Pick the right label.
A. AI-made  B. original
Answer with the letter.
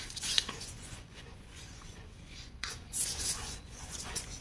A